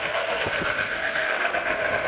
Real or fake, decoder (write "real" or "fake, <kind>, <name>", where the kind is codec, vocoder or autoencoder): fake, codec, SNAC